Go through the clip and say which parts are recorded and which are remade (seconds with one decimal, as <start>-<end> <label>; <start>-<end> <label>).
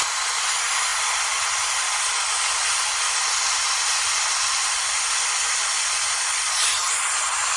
0.0-7.6 recorded